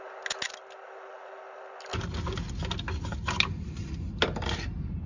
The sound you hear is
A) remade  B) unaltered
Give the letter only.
B